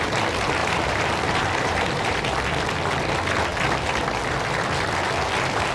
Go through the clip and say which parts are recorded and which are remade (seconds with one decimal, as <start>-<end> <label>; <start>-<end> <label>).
0.0-0.6 recorded; 0.6-2.2 remade; 2.2-5.7 recorded